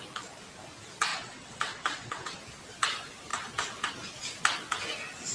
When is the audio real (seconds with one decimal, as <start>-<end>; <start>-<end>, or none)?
0.0-1.1; 2.4-5.3